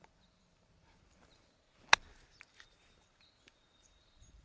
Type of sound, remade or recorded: remade